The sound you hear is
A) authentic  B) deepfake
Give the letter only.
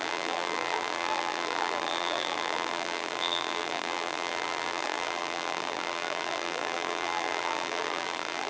B